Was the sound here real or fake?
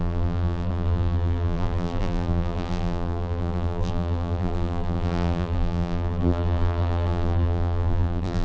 fake